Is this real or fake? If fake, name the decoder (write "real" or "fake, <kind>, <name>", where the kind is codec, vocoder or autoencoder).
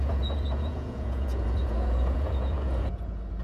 fake, vocoder, Vocos